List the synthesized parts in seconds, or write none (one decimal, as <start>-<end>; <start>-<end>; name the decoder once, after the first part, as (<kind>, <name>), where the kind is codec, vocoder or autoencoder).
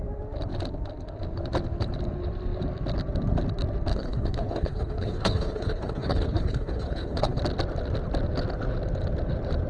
3.9-7.4 (codec, HILCodec)